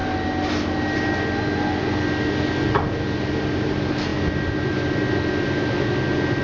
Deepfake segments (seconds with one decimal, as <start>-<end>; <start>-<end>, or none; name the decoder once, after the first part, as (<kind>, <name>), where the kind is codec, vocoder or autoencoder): none